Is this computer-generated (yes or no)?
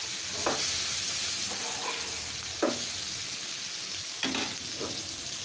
no